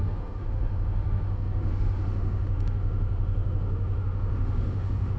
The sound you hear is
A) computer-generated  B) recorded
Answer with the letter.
A